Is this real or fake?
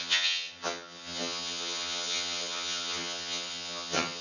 fake